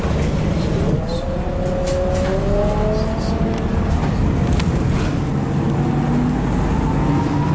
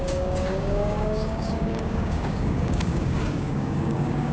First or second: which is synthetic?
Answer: second